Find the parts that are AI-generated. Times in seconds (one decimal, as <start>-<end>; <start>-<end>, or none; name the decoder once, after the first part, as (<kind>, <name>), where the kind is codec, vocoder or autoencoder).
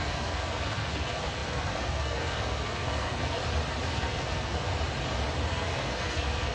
0.0-3.4 (codec, SNAC); 3.9-4.7; 5.5-6.5